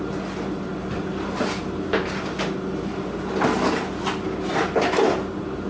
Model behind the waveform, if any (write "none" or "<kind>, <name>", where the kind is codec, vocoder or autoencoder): none